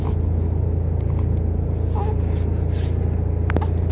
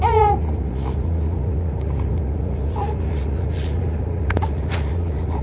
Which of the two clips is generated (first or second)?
second